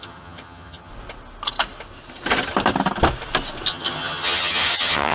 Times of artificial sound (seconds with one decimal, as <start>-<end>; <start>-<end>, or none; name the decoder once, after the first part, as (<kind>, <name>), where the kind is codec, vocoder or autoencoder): 0.0-0.9 (vocoder, HiFi-GAN); 3.7-5.1